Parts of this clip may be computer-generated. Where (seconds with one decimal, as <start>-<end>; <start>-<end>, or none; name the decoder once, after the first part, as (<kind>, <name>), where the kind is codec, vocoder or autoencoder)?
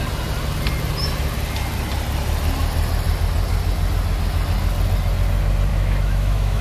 5.7-6.6 (autoencoder, DAC-VAE)